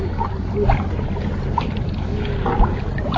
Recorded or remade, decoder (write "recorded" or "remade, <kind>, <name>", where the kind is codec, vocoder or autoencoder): recorded